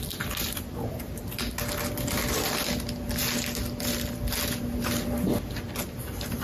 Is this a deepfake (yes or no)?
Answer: no